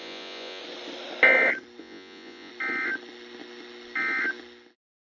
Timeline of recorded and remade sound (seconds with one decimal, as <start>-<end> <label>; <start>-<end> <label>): 0.0-0.6 remade; 0.6-1.8 recorded; 1.8-2.5 remade; 2.5-5.0 recorded